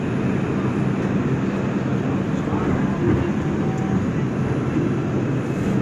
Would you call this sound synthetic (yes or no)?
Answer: no